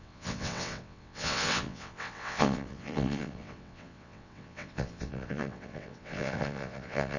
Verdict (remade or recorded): remade